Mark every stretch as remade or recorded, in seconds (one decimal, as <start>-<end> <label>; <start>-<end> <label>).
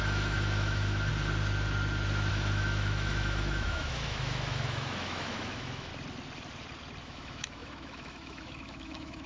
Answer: 0.0-1.1 remade; 1.1-2.3 recorded; 2.3-5.9 remade; 5.9-7.0 recorded; 7.0-9.3 remade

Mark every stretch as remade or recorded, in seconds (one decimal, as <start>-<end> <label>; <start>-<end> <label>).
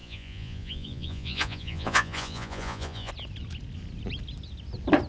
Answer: 0.0-3.1 remade; 3.1-5.1 recorded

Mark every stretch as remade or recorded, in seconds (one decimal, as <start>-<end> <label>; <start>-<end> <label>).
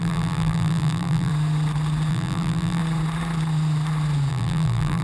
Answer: 0.0-1.3 remade; 1.3-2.1 recorded; 2.1-2.8 remade; 2.8-4.3 recorded; 4.3-5.0 remade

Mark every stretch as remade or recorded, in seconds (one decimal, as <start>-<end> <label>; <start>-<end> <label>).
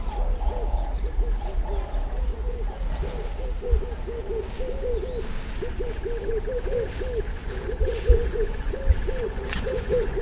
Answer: 0.0-7.3 recorded; 7.3-10.2 remade